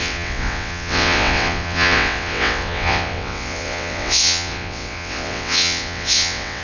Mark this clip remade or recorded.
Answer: remade